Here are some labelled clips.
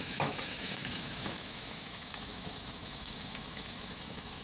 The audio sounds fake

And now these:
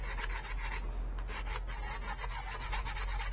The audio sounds real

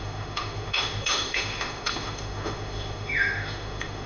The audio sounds fake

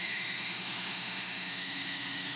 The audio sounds fake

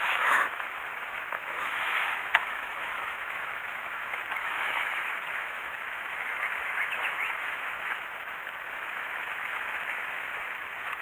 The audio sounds fake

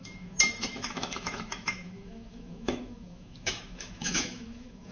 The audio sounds fake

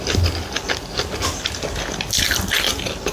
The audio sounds real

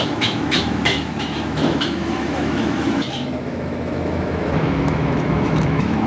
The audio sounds fake